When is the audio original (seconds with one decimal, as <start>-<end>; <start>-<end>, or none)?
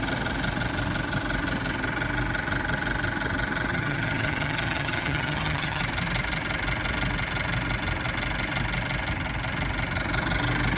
0.0-3.7; 5.8-10.8